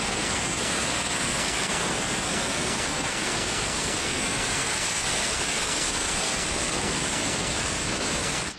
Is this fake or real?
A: fake